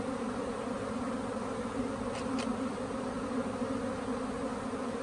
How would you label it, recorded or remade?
recorded